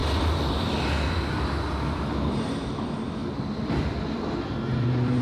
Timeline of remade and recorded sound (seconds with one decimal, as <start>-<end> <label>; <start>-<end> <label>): 0.0-1.3 recorded; 1.3-3.2 remade; 3.2-3.8 recorded; 3.8-5.2 remade